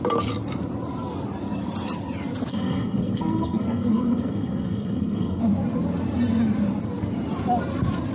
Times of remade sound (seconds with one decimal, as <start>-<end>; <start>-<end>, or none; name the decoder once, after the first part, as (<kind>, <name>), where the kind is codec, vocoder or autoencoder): 2.5-5.4 (codec, SNAC)